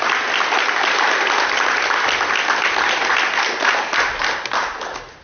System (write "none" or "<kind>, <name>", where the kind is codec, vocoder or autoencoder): none